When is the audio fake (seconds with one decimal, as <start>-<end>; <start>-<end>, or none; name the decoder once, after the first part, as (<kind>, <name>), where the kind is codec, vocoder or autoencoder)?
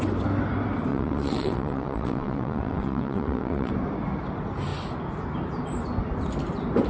0.9-3.7 (vocoder, WaveNeXt)